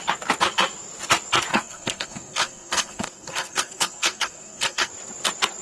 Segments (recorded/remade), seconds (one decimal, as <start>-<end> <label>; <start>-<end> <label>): 0.0-1.5 recorded; 1.5-4.9 remade; 4.9-5.6 recorded